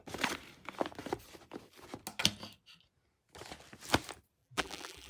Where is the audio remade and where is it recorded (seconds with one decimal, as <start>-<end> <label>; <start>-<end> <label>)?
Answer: 0.0-4.4 recorded; 4.4-5.1 remade